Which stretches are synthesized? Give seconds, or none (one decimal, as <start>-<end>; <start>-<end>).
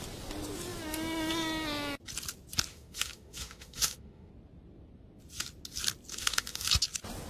2.7-4.3; 6.1-6.7